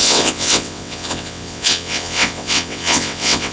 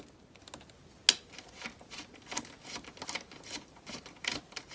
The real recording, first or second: second